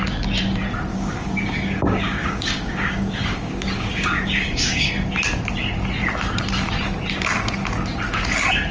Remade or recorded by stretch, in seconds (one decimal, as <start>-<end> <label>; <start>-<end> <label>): 0.0-0.9 recorded; 0.9-4.9 remade; 4.9-8.7 recorded